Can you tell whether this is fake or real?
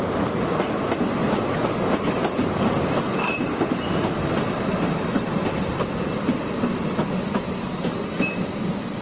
real